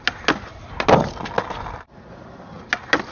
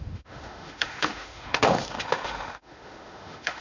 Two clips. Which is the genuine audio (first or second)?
first